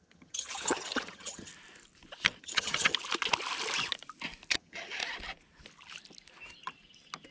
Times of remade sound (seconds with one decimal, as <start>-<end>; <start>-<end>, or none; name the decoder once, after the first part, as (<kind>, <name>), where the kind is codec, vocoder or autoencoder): 0.0-1.5 (vocoder, HiFi-GAN); 2.4-2.9; 4.5-5.0